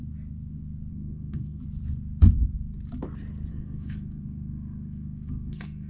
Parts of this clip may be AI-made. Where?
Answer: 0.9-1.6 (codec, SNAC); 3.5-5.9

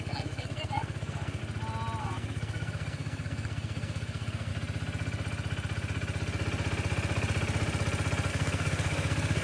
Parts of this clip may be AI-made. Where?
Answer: 0.0-1.4 (codec, SNAC); 2.0-4.5; 8.3-9.4

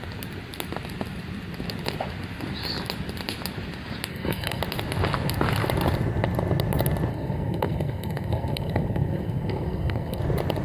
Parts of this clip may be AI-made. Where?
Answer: 4.1-4.6 (codec, SNAC); 7.1-10.2

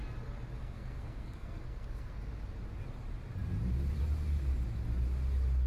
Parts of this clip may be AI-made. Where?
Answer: 0.6-2.2 (codec, SNAC)

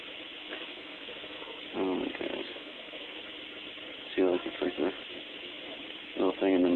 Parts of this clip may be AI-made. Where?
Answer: 0.4-1.6 (codec, SNAC); 2.4-3.2

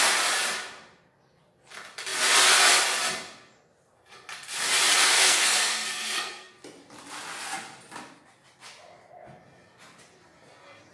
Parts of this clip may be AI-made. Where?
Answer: 5.0-6.5 (codec, SNAC)